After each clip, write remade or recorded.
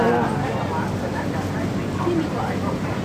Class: recorded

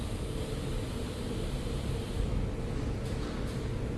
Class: recorded